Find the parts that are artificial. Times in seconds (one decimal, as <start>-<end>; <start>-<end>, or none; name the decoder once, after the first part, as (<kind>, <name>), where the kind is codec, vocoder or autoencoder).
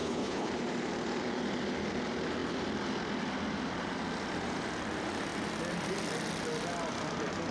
0.0-0.5 (codec, HILCodec)